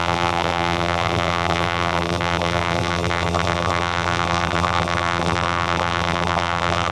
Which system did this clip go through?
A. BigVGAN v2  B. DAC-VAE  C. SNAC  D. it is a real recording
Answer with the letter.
A